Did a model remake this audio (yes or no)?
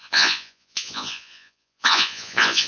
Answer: yes